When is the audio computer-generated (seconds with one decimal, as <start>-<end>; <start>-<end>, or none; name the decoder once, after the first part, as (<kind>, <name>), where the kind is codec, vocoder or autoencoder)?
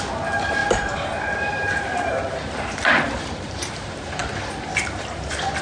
0.0-0.6 (vocoder, BigVGAN v2); 1.8-4.2; 4.8-5.6